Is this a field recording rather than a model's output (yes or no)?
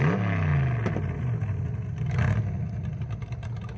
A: yes